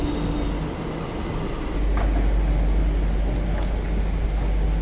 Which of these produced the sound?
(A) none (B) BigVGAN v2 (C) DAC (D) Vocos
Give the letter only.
A